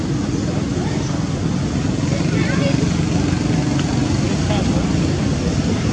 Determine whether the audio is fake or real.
real